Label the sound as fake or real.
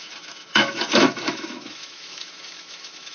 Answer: fake